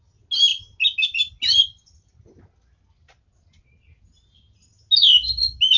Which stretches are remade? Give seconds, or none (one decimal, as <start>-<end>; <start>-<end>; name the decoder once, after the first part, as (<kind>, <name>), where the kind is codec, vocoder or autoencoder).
none